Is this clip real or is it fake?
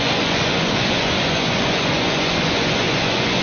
fake